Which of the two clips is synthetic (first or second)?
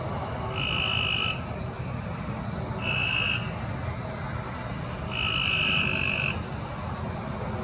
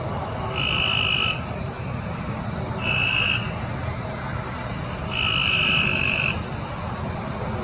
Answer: second